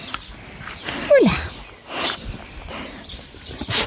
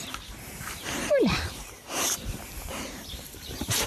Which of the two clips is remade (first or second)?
second